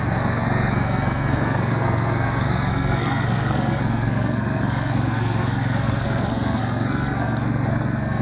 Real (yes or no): no